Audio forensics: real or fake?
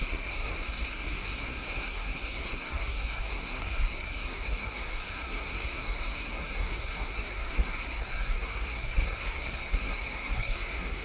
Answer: fake